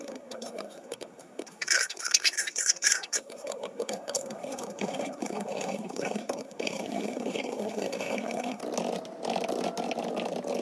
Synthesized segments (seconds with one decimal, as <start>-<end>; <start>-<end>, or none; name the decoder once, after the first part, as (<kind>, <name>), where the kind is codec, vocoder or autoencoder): 0.0-8.6 (codec, SNAC)